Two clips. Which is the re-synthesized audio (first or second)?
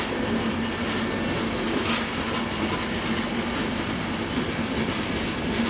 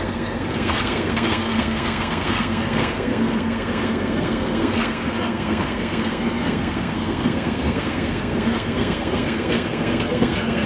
second